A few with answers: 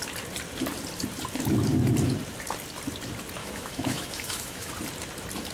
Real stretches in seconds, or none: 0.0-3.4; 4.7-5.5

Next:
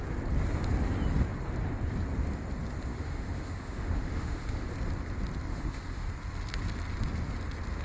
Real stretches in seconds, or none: 0.0-2.9; 4.7-5.5; 6.1-7.8

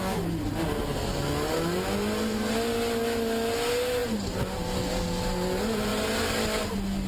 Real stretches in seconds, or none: 0.0-7.1

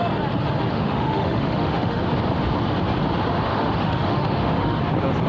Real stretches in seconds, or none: 0.0-0.7; 2.0-3.5; 4.8-5.3

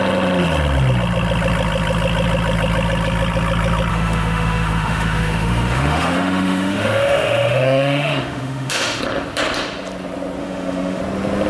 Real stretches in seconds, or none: 0.0-3.9; 9.0-10.4; 11.0-11.5

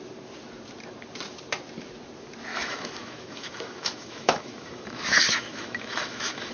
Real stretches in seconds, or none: 0.0-2.5